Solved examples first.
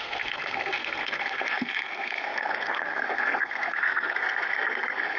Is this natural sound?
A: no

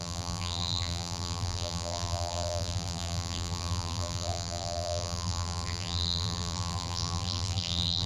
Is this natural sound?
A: no